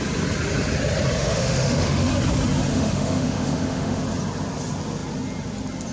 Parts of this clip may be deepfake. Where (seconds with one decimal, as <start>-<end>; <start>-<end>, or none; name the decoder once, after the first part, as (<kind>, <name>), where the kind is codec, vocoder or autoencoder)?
1.2-2.1 (autoencoder, DAC-VAE); 2.7-4.0